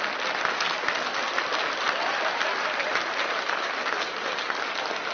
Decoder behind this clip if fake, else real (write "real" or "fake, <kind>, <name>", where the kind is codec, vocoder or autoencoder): real